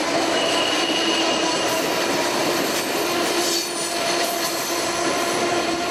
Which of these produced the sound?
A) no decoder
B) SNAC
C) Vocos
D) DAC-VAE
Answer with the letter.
A